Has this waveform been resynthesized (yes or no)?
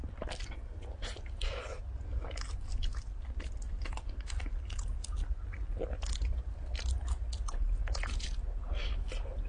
no